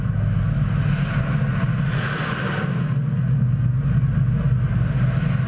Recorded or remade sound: recorded